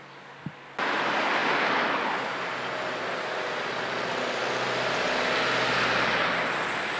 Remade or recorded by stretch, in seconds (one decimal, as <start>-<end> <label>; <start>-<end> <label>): 0.0-7.0 recorded